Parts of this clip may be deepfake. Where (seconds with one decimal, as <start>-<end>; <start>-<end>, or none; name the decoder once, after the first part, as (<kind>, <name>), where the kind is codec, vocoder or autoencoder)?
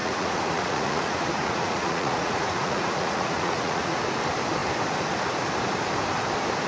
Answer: 0.0-4.0 (vocoder, Vocos)